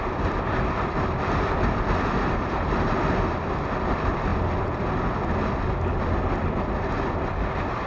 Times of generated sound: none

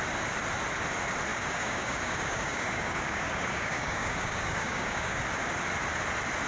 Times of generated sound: 1.3-5.2 (codec, DAC)

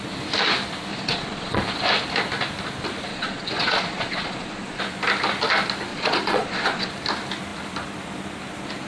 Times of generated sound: 0.9-1.6 (vocoder, Vocos); 3.1-4.8; 5.9-6.9

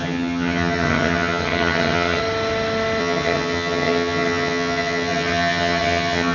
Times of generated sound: 0.0-2.2 (vocoder, HiFi-GAN); 3.0-6.3

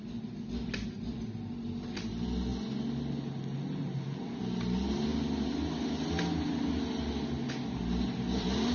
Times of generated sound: none

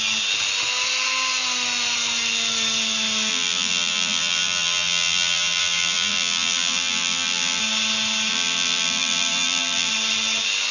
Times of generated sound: 3.3-7.6 (vocoder, BigVGAN v2); 8.3-9.9

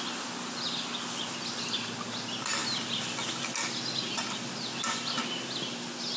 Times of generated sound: none

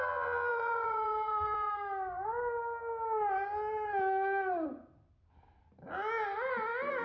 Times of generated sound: 0.5-1.7 (vocoder, Vocos)